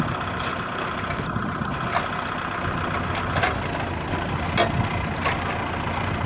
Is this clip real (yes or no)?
yes